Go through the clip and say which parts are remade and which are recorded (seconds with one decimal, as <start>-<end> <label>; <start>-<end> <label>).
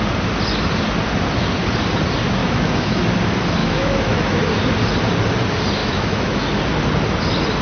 0.0-2.4 recorded; 2.4-3.0 remade; 3.0-3.6 recorded; 3.6-4.4 remade; 4.4-5.8 recorded; 5.8-6.4 remade; 6.4-7.6 recorded